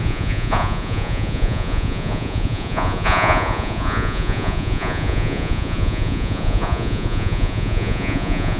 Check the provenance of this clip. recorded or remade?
remade